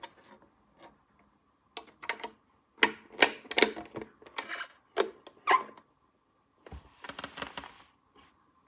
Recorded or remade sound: recorded